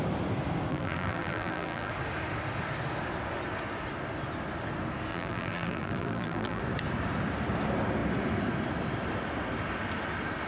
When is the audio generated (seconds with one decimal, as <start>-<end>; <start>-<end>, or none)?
0.7-1.9; 5.1-6.6